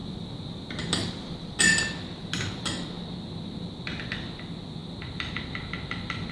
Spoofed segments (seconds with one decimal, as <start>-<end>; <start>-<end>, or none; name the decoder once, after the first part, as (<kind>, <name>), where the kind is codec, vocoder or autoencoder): none

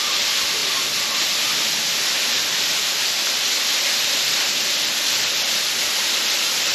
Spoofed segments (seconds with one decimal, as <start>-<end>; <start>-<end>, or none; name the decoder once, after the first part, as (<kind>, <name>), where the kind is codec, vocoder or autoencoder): none